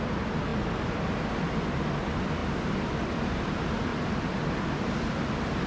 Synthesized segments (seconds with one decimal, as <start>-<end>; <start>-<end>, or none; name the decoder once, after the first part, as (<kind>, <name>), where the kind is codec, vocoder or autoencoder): 0.0-3.9 (vocoder, BigVGAN v2); 5.1-5.7